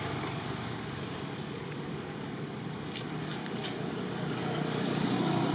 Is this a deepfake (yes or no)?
yes